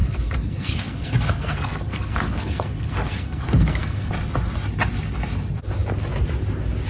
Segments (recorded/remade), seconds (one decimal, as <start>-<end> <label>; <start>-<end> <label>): 0.0-4.1 remade; 4.1-6.9 recorded

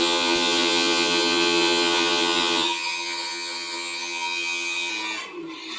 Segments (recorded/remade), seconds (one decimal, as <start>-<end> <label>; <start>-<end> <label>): 0.0-4.9 remade; 4.9-5.8 recorded

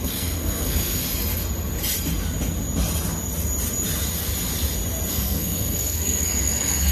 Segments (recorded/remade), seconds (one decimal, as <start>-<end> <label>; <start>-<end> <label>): 0.0-1.0 remade; 1.0-5.1 recorded; 5.1-6.9 remade

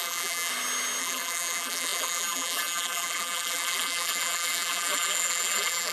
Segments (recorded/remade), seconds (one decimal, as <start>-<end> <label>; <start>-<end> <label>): 0.0-0.5 remade; 0.5-1.0 recorded; 1.0-5.9 remade

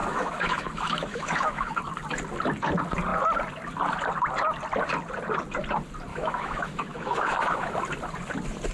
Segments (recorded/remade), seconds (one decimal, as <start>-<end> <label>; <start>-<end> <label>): 0.0-1.8 remade; 1.8-6.1 recorded; 6.1-7.7 remade; 7.7-8.7 recorded

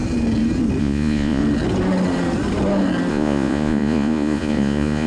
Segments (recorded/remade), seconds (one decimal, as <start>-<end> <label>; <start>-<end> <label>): 0.0-0.8 recorded; 0.8-1.4 remade; 1.4-3.1 recorded; 3.1-5.1 remade

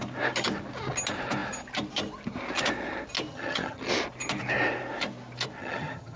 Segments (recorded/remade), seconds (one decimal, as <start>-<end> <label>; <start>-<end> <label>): 0.0-3.3 recorded; 3.3-3.9 remade; 3.9-5.6 recorded; 5.6-6.2 remade